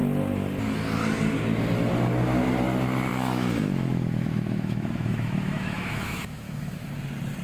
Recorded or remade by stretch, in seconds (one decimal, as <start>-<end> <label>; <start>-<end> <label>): 0.0-3.1 recorded; 3.1-6.9 remade; 6.9-7.4 recorded